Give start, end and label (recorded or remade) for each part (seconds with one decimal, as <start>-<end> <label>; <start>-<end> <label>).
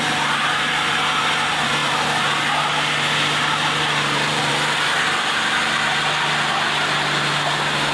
0.0-7.9 recorded